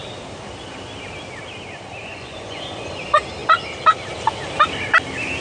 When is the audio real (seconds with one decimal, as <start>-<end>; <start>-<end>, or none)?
0.0-2.0; 3.0-5.4